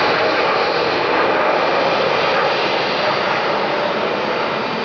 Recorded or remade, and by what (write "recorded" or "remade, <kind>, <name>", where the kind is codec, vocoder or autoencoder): recorded